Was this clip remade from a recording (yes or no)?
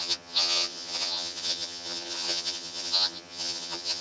yes